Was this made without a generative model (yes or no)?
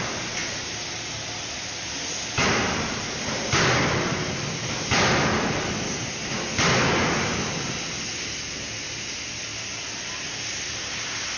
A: yes